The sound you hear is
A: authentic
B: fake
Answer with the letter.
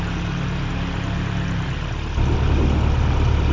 A